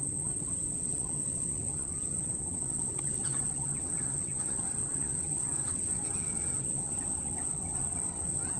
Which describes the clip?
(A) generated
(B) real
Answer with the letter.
A